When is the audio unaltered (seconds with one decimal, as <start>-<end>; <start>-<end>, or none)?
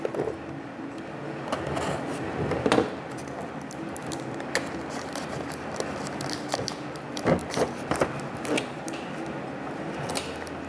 0.0-10.7